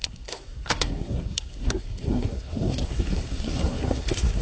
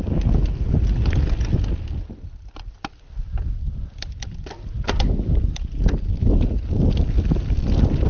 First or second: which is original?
second